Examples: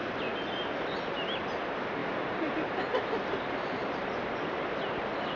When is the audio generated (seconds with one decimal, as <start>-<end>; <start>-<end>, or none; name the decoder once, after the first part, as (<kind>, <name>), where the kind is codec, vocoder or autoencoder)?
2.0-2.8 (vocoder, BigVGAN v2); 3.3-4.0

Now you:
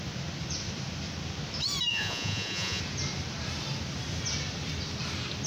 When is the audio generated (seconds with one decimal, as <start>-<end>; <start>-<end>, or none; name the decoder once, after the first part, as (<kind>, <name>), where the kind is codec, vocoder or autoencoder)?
1.9-2.8 (vocoder, Vocos)

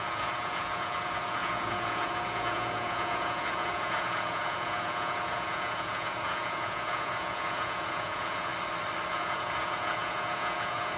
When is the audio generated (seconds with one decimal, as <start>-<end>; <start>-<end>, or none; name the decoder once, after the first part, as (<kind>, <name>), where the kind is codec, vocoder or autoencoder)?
0.0-8.5 (vocoder, Vocos); 9.1-11.0